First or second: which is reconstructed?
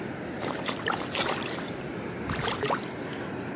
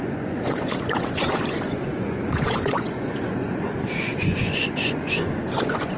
second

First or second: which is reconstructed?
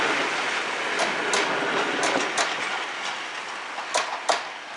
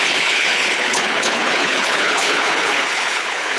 second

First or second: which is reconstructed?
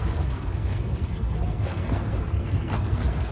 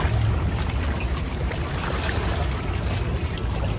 first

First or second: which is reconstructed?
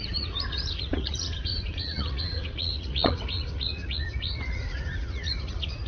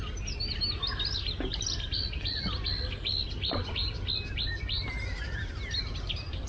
first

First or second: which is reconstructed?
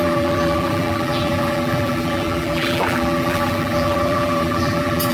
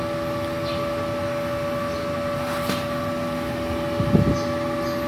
first